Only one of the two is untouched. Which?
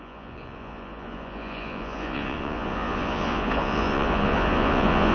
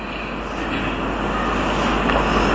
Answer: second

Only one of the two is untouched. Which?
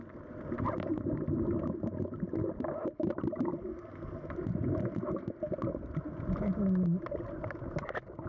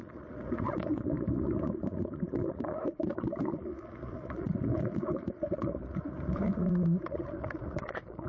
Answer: first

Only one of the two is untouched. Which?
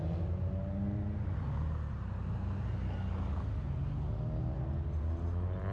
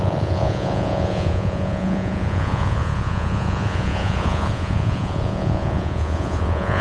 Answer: first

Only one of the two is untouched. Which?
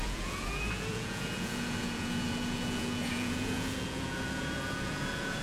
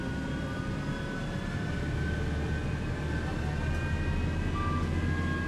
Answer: second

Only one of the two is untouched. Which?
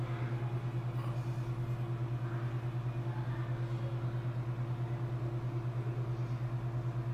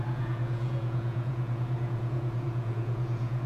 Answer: first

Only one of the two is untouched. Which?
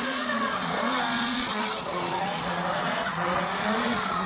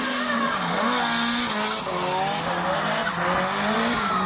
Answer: second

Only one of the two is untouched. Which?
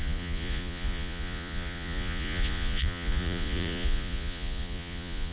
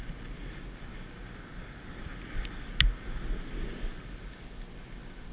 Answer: second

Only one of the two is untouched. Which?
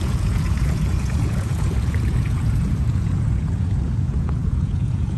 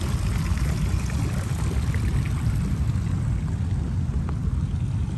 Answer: second